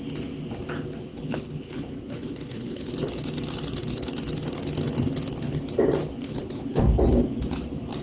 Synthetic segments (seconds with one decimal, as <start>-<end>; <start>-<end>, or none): 1.1-2.9; 6.2-6.8